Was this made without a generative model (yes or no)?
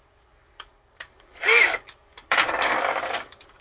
no